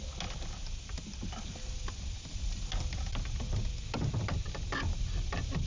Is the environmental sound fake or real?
real